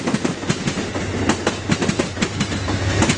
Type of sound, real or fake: real